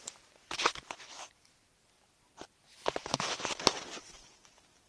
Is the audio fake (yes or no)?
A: no